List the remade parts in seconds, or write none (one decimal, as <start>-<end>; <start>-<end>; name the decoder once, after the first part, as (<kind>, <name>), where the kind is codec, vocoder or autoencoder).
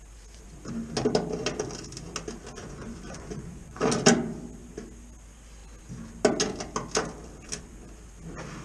2.6-3.8 (vocoder, Vocos)